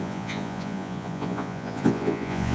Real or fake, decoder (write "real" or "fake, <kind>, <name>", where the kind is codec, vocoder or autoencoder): fake, vocoder, Vocos